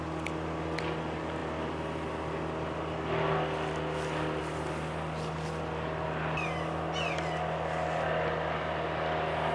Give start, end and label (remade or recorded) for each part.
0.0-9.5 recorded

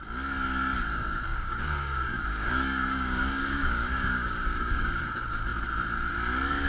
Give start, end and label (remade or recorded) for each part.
0.0-1.3 recorded; 1.3-5.0 remade; 5.0-6.7 recorded

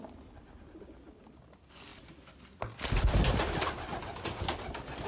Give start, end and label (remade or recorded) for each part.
0.0-5.1 recorded